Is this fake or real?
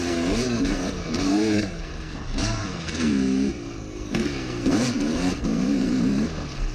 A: fake